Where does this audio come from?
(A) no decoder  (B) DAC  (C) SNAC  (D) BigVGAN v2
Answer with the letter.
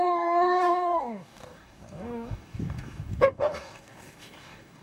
B